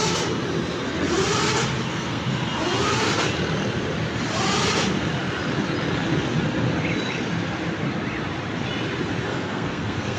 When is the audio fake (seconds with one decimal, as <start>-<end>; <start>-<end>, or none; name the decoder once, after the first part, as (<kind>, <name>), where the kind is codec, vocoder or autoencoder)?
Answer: 1.9-2.4 (codec, SNAC); 9.3-10.2